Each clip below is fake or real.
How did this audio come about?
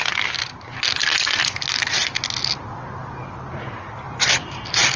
real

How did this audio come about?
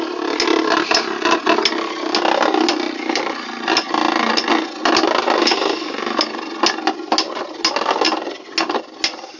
real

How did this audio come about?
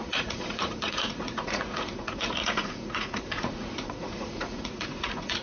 fake